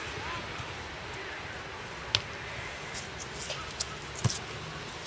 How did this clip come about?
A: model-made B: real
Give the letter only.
B